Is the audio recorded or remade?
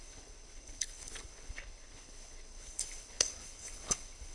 remade